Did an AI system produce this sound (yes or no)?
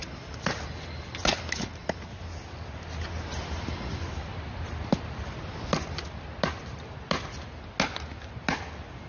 no